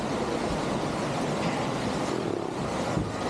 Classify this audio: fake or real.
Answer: real